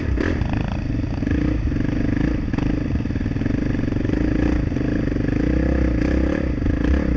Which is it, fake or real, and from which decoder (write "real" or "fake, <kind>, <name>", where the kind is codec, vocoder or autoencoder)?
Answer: real